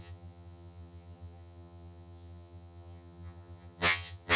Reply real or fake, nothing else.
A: fake